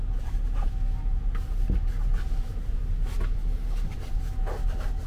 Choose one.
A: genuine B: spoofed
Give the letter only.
A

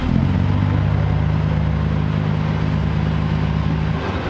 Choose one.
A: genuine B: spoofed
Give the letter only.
A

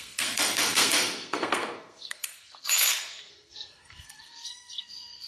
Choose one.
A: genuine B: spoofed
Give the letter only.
B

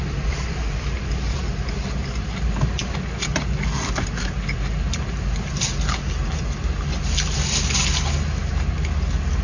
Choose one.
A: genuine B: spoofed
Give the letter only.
A